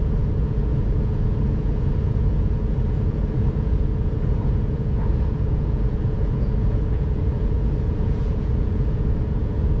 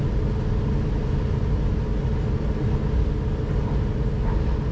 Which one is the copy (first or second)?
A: first